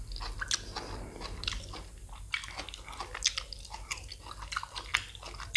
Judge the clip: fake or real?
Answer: real